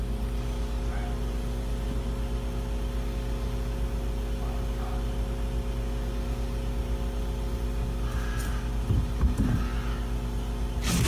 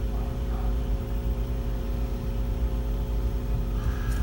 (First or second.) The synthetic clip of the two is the second